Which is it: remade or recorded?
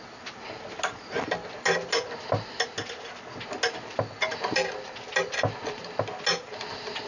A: recorded